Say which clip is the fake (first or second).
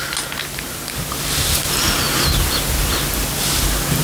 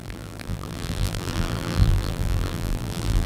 second